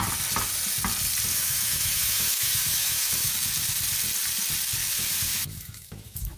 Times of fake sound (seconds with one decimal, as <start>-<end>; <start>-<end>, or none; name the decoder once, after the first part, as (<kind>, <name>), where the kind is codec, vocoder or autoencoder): 1.3-3.3 (autoencoder, DAC-VAE); 4.8-6.4